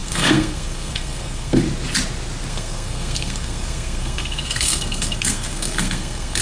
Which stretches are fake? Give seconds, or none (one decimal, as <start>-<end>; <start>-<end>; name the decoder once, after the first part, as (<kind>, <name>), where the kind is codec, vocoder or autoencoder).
0.0-1.6 (codec, SNAC); 2.5-6.4